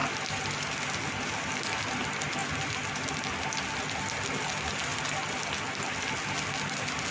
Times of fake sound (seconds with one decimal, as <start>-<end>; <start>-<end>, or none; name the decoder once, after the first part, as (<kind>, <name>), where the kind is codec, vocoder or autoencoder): none